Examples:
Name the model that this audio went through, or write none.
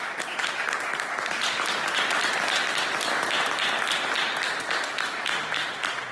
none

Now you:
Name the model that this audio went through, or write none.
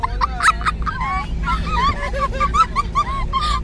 none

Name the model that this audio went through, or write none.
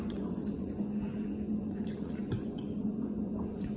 vocoder, Vocos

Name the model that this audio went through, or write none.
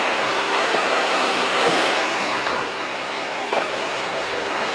codec, SNAC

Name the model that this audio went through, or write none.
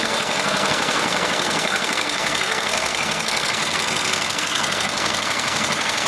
codec, SNAC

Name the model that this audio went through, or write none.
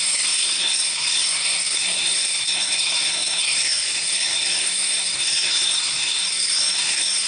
codec, SNAC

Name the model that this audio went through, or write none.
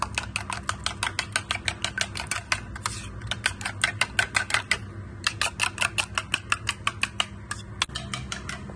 none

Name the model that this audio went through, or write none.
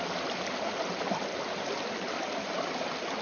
none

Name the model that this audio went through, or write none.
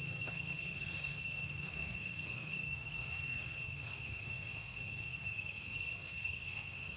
codec, SNAC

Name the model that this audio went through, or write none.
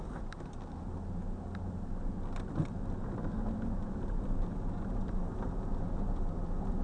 none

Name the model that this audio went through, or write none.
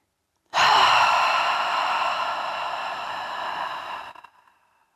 none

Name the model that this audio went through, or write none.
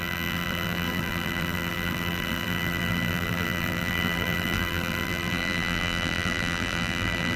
vocoder, BigVGAN v2